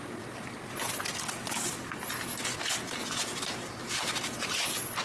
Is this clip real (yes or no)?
yes